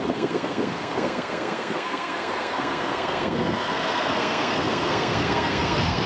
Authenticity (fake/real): fake